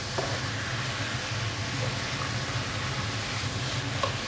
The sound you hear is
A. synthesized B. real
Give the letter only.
B